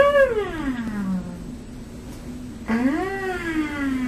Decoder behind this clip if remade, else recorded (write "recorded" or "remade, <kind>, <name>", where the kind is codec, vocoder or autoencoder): recorded